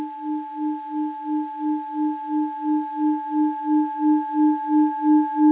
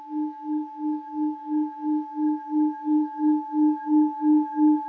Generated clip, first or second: second